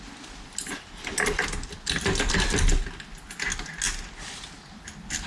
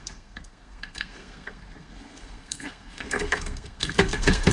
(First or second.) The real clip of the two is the first